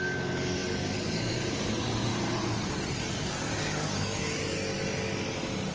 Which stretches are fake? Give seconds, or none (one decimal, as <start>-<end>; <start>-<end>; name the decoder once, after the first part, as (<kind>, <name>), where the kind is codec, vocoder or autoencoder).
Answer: 0.0-2.1 (codec, DAC); 3.6-4.7